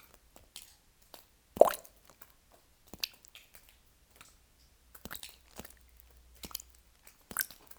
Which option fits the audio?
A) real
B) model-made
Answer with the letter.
A